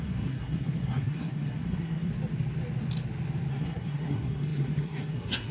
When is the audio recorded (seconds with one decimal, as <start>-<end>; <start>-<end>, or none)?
2.1-3.5

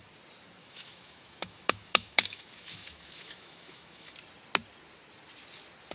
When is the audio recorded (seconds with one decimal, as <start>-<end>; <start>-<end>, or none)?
0.0-0.6; 4.1-5.9